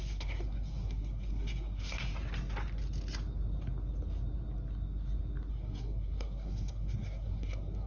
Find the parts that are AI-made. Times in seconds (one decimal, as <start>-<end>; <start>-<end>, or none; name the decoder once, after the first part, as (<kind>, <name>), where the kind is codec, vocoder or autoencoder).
0.0-2.1 (codec, SNAC); 5.5-7.9